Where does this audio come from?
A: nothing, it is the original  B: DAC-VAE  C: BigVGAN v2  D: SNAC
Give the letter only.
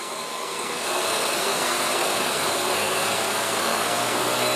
D